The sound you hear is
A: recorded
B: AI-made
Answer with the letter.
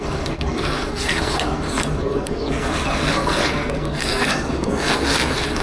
B